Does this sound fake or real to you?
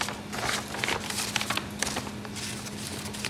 real